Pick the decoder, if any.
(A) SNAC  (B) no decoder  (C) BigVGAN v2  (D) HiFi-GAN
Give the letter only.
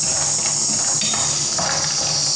B